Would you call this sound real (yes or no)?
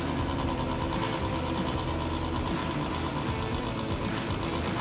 yes